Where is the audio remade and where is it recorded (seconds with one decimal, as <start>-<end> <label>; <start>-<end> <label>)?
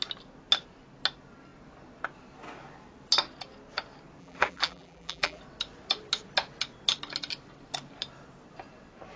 0.0-4.2 recorded; 4.2-5.4 remade; 5.4-9.2 recorded